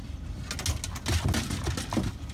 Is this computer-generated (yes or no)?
no